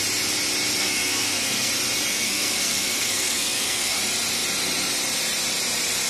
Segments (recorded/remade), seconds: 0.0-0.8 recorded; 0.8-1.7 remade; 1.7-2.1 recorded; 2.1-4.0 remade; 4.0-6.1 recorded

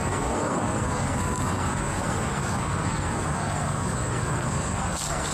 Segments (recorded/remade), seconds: 0.0-5.3 remade

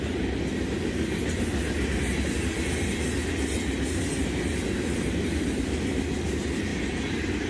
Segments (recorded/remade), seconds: 0.0-7.5 recorded

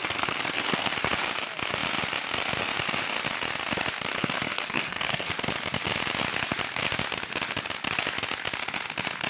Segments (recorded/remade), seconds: 0.0-0.9 remade; 0.9-4.1 recorded; 4.1-5.3 remade; 5.3-9.3 recorded

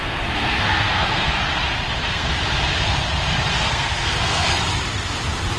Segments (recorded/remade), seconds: 0.0-1.4 remade; 1.4-1.9 recorded; 1.9-2.3 remade; 2.3-3.5 recorded; 3.5-4.5 remade; 4.5-5.6 recorded

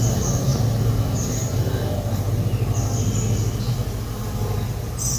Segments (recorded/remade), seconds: 0.0-5.2 recorded